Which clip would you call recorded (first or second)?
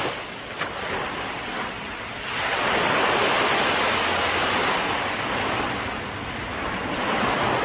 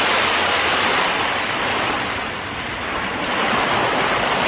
first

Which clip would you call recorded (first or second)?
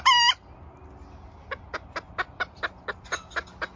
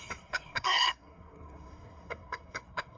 first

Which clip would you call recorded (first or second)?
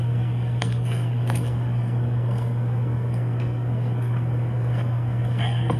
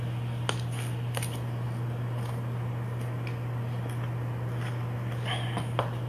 second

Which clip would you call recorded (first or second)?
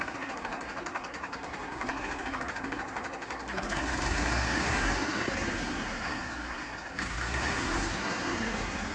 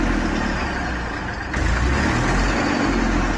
second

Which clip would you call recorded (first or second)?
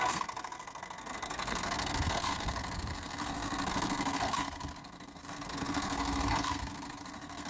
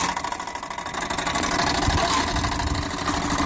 second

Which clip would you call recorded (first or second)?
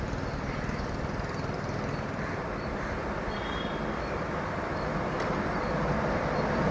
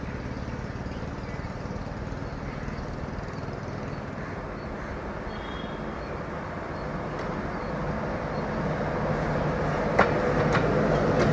second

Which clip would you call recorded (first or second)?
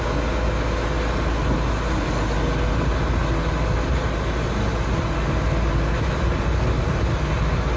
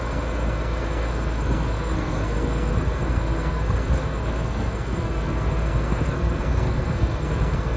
first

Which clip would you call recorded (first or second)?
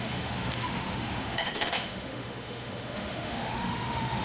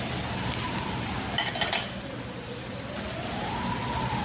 second